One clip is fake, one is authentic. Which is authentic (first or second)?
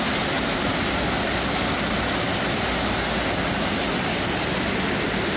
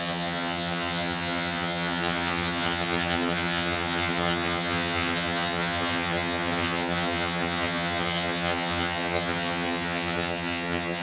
first